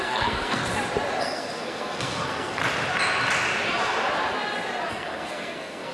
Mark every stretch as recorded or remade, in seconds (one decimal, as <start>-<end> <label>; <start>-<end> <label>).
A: 0.0-0.6 remade; 0.6-1.2 recorded; 1.2-2.6 remade; 2.6-4.9 recorded; 4.9-5.9 remade